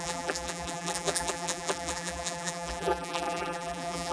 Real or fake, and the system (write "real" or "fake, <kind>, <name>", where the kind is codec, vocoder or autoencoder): fake, vocoder, BigVGAN v2